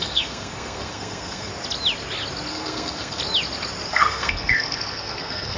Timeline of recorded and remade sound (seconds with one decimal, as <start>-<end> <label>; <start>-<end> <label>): 0.0-1.5 remade; 1.5-2.5 recorded; 2.5-3.2 remade; 3.2-3.9 recorded; 3.9-5.6 remade